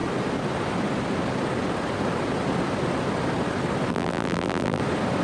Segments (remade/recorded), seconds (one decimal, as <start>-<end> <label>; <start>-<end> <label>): 0.0-3.9 recorded; 3.9-4.8 remade; 4.8-5.2 recorded